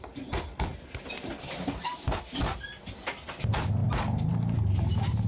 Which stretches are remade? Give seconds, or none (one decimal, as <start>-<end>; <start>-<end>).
none